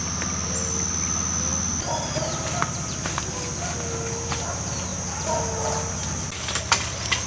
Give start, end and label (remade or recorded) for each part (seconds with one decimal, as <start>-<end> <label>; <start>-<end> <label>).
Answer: 0.0-7.3 recorded